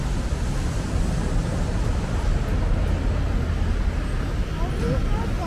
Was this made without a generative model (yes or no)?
yes